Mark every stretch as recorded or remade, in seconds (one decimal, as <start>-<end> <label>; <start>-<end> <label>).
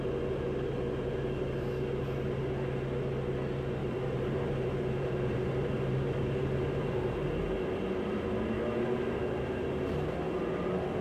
0.0-3.8 recorded; 3.8-7.3 remade; 7.3-11.0 recorded